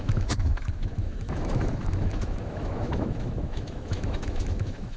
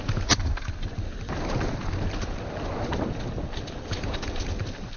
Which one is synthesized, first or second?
first